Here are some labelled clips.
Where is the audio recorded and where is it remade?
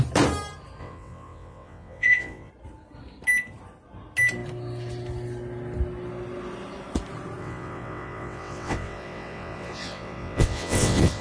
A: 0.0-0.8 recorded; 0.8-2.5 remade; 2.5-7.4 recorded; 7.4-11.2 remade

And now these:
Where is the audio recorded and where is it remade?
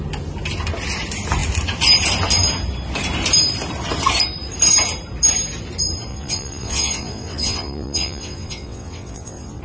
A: 0.0-6.1 recorded; 6.1-9.6 remade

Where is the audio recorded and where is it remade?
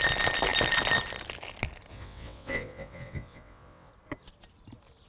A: 0.0-1.9 recorded; 1.9-3.9 remade; 3.9-5.1 recorded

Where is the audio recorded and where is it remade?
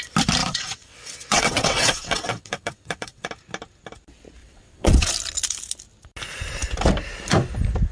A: 0.0-0.4 recorded; 0.4-3.3 remade; 3.3-4.4 recorded; 4.4-5.1 remade; 5.1-7.9 recorded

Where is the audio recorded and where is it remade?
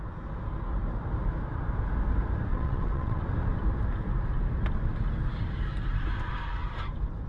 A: 0.0-2.5 recorded; 2.5-3.2 remade; 3.2-7.3 recorded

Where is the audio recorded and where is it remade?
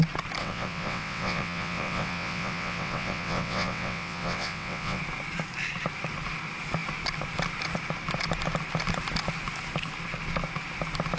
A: 0.0-0.4 recorded; 0.4-5.0 remade; 5.0-11.2 recorded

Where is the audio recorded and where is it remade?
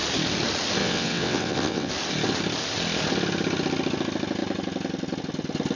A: 0.0-0.8 recorded; 0.8-1.9 remade; 1.9-5.8 recorded